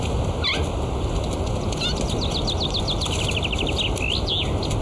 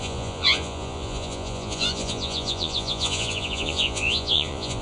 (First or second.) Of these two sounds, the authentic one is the first